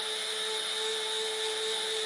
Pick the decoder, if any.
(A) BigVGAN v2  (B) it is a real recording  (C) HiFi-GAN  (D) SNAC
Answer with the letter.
B